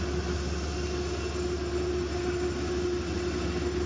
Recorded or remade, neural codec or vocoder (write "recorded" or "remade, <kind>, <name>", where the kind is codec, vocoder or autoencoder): recorded